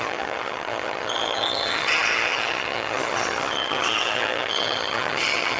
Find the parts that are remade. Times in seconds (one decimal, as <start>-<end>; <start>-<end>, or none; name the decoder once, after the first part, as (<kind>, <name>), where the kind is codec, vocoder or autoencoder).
0.0-5.6 (vocoder, HiFi-GAN)

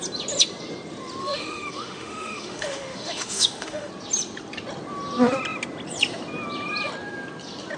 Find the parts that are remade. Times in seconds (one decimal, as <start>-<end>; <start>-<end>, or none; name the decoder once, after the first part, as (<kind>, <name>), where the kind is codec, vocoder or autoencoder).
1.2-3.9 (autoencoder, DAC-VAE)

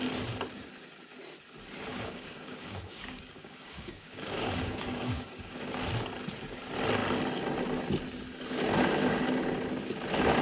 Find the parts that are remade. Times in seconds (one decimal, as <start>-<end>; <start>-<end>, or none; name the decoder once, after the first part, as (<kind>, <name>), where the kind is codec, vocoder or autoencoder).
1.9-5.8 (codec, DAC)

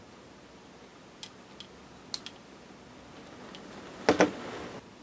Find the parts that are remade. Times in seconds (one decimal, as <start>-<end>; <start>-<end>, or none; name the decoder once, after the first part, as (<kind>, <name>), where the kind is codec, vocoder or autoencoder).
none

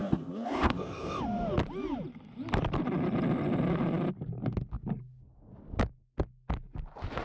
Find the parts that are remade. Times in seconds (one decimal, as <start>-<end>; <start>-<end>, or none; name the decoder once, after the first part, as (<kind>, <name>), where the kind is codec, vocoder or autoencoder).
0.0-1.2 (codec, ZipCodec)

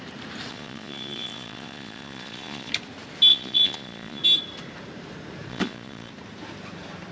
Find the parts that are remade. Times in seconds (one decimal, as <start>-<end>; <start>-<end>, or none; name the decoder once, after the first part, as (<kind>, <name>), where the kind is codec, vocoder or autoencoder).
0.5-2.7 (vocoder, Vocos); 3.3-4.2; 5.5-6.1

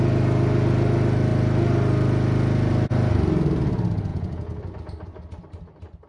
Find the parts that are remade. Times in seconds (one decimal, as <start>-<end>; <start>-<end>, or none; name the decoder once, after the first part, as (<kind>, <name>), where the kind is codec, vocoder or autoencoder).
4.1-4.6 (vocoder, Vocos)

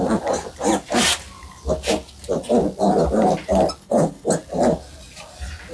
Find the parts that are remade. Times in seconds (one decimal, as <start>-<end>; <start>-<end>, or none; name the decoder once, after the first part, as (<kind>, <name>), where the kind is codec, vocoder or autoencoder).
3.8-4.3 (codec, HILCodec)